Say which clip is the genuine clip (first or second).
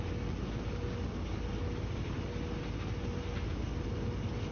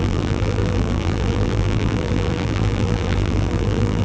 first